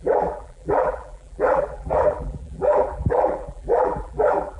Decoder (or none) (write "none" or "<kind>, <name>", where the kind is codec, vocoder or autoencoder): vocoder, BigVGAN v2